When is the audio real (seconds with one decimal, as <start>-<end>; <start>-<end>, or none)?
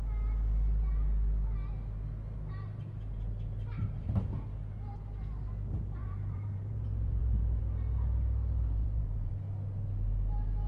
0.0-6.0; 7.6-8.8; 9.3-10.7